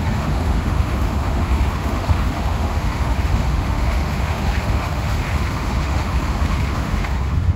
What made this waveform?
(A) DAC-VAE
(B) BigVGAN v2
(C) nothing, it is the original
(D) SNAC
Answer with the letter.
A